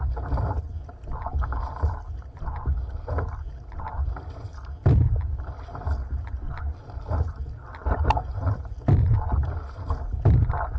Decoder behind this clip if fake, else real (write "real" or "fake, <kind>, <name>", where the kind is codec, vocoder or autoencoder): real